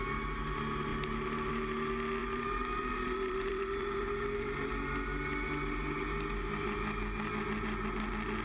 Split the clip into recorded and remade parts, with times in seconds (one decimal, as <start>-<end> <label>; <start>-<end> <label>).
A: 0.0-2.2 recorded; 2.2-4.7 remade; 4.7-8.4 recorded

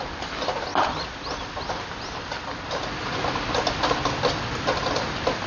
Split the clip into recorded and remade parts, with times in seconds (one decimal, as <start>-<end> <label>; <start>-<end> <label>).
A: 0.0-5.5 recorded

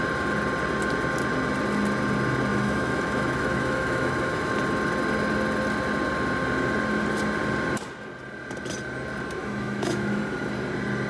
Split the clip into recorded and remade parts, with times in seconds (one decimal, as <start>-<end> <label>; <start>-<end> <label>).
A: 0.0-2.5 recorded; 2.5-4.5 remade; 4.5-9.4 recorded; 9.4-10.2 remade; 10.2-11.1 recorded

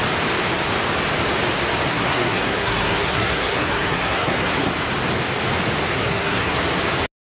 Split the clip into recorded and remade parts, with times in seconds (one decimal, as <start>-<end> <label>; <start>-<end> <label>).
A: 0.0-1.9 recorded; 1.9-4.7 remade; 4.7-5.9 recorded; 5.9-6.8 remade; 6.8-7.2 recorded

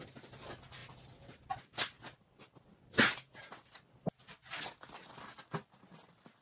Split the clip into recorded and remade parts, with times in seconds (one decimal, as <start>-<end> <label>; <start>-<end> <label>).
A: 0.0-6.4 recorded